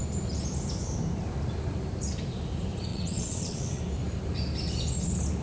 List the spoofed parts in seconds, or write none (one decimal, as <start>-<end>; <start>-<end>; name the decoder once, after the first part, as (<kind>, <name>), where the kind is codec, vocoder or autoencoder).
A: 2.9-3.8 (vocoder, WaveNeXt)